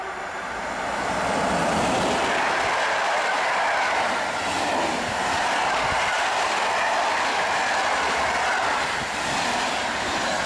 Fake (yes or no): no